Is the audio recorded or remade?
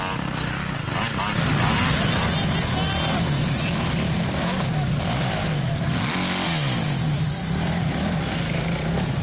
recorded